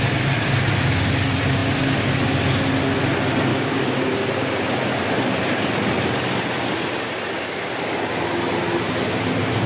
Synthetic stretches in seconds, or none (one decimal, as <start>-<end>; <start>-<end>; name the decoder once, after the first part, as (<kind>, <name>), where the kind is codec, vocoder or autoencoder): 3.5-4.1 (codec, DAC)